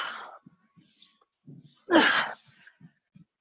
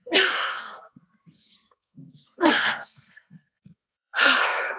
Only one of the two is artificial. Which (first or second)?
second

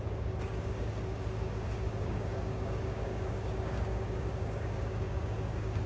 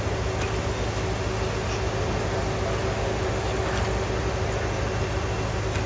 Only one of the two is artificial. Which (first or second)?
first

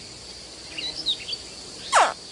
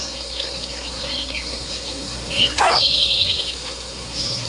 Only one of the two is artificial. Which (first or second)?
second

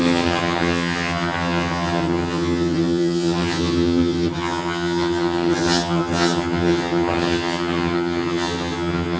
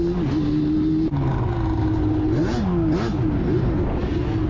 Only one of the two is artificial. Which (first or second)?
first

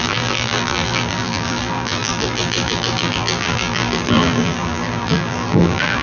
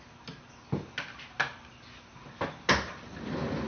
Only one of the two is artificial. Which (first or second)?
first